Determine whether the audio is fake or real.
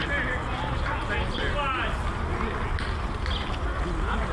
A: real